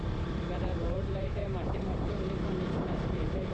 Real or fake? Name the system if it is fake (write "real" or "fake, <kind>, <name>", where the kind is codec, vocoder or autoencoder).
fake, vocoder, BigVGAN v2